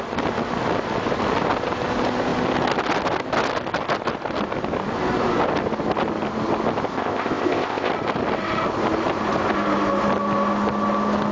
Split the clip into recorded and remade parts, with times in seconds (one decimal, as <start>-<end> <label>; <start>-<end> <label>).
0.0-6.9 recorded; 6.9-7.9 remade; 7.9-11.3 recorded